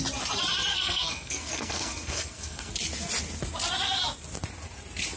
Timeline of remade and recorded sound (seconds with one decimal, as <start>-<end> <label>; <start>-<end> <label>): 0.0-0.7 recorded; 0.7-2.7 remade; 2.7-5.2 recorded